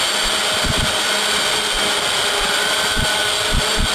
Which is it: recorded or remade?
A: recorded